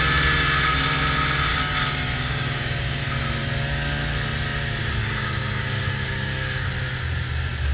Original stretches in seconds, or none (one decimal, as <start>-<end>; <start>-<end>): 0.0-1.5; 3.0-5.0; 6.7-7.7